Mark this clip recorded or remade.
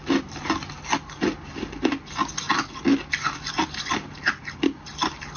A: recorded